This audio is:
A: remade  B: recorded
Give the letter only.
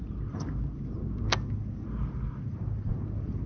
B